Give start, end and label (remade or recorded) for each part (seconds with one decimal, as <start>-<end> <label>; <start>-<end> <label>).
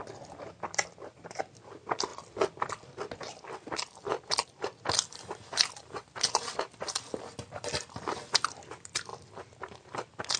0.0-10.4 recorded